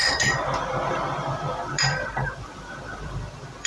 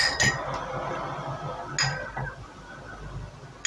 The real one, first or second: second